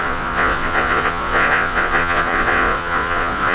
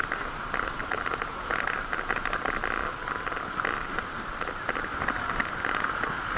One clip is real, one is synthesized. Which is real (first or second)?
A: second